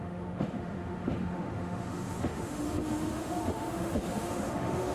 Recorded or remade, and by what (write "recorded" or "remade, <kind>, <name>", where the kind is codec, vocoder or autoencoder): remade, autoencoder, DAC-VAE